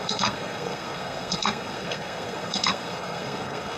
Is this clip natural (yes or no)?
no